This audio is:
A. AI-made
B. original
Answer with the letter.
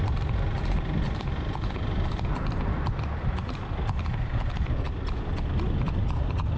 B